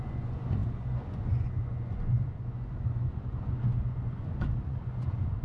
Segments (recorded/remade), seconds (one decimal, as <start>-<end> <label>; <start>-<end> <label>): 0.0-5.4 remade